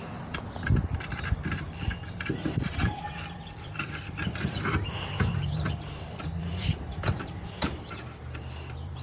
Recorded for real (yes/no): no